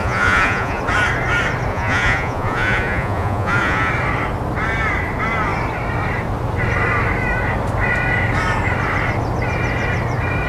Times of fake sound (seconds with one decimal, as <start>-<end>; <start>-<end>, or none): 0.0-0.8; 1.7-3.9